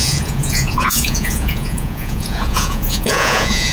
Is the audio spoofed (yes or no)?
yes